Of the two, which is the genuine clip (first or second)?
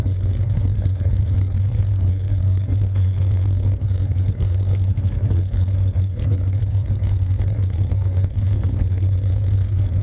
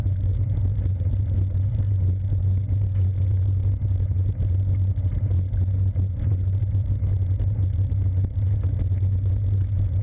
second